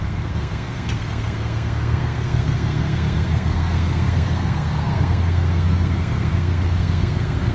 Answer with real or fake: fake